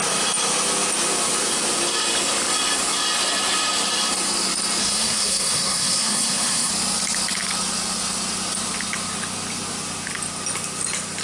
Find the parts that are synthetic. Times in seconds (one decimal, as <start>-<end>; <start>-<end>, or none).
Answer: 4.8-6.7